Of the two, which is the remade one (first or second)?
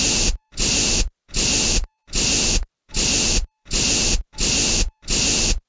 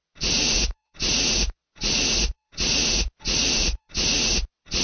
second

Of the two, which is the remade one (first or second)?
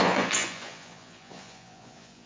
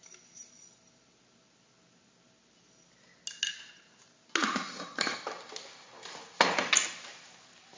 first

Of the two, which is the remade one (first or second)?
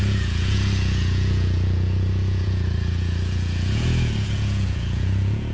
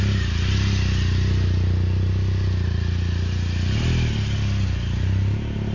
first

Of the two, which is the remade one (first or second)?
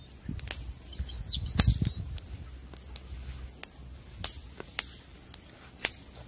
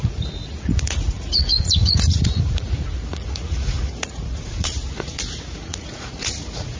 second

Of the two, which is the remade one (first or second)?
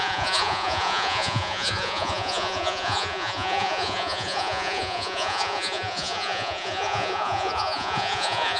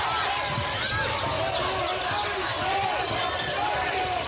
first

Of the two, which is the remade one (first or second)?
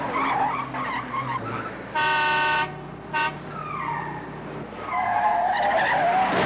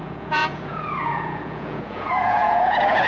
second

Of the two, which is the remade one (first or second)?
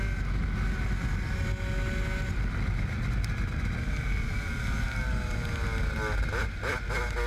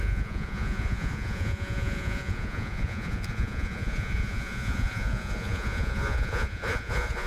second